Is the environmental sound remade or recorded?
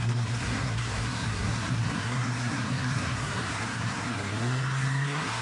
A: remade